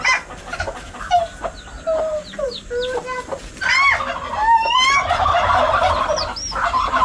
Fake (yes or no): no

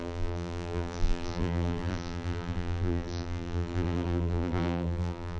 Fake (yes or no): yes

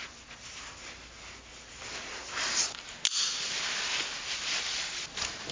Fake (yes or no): no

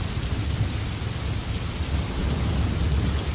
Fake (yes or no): no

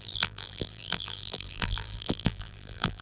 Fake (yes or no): yes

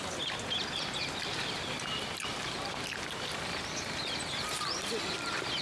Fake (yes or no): no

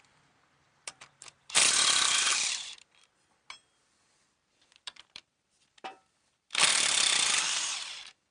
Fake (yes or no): yes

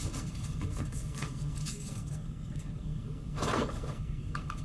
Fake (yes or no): yes